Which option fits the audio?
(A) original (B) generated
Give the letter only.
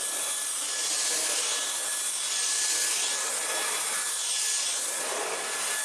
A